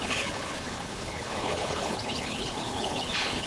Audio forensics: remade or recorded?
remade